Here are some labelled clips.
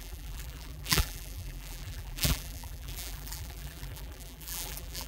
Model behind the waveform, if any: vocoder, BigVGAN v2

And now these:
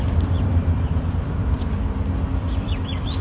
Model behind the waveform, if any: vocoder, BigVGAN v2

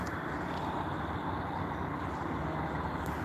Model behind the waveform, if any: none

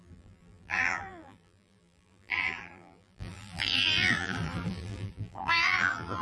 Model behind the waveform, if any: vocoder, BigVGAN v2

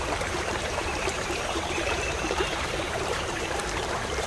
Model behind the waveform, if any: vocoder, BigVGAN v2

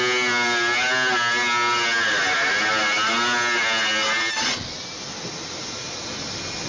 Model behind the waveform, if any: none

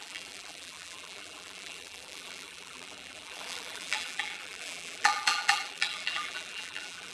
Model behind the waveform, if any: vocoder, BigVGAN v2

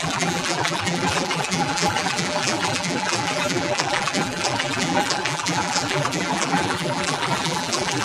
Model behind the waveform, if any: vocoder, BigVGAN v2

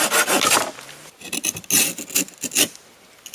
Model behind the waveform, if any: none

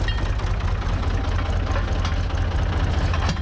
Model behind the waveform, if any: none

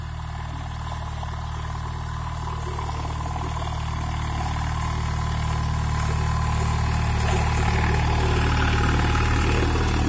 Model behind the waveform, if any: none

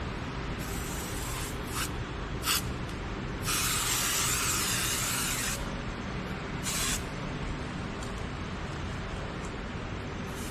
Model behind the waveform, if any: none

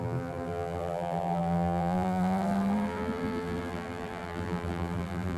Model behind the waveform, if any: vocoder, BigVGAN v2